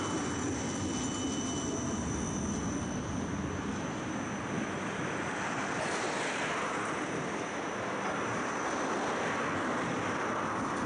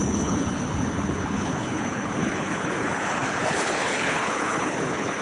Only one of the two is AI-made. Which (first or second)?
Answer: second